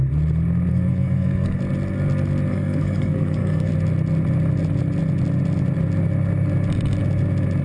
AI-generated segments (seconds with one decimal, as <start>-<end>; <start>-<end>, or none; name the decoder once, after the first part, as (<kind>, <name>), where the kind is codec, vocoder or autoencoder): 0.7-1.6 (codec, SNAC); 2.5-3.7